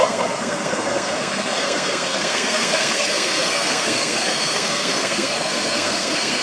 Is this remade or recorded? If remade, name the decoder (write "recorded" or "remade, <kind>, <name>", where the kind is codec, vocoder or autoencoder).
remade, codec, SNAC